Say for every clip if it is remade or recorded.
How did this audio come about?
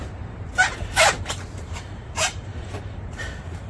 remade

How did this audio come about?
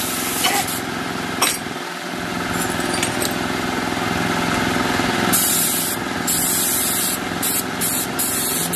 recorded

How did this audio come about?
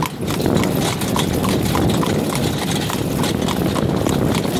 recorded